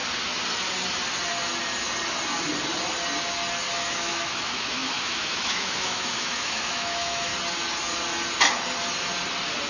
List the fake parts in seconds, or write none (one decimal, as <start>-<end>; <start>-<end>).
3.7-7.3